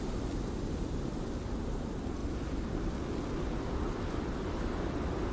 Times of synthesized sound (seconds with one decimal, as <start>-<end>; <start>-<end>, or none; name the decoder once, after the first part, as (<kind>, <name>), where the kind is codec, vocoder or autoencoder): none